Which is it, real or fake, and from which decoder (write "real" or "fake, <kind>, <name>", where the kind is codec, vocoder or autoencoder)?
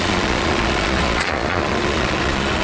fake, vocoder, Vocos